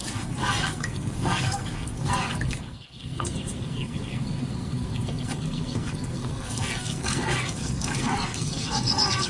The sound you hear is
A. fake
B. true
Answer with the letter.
A